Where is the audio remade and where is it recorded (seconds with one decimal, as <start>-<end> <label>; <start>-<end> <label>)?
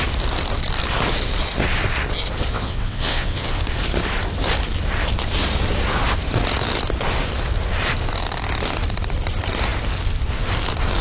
0.0-2.5 recorded; 2.5-3.6 remade; 3.6-11.0 recorded